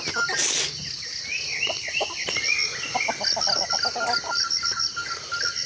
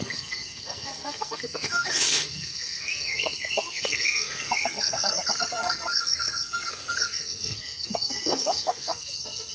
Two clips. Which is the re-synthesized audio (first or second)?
second